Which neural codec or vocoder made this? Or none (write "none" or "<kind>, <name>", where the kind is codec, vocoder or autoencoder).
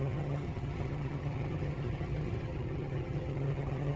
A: vocoder, HiFi-GAN